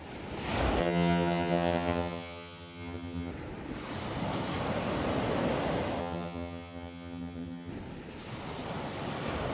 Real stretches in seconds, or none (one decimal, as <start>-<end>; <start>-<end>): 0.0-0.8; 3.3-6.0; 7.7-9.5